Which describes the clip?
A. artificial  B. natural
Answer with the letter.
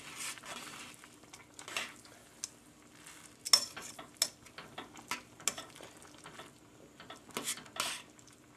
B